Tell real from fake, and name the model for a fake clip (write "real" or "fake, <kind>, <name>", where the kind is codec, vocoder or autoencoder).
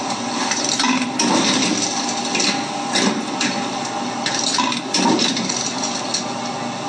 real